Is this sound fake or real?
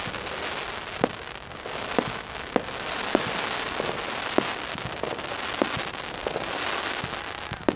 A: real